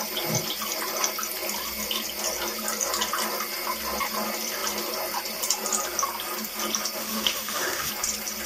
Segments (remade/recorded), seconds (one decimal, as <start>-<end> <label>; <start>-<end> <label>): 0.0-7.0 recorded; 7.0-7.9 remade; 7.9-8.5 recorded